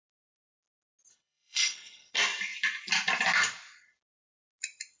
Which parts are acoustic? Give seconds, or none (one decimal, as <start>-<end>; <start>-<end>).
0.0-1.1; 2.1-5.0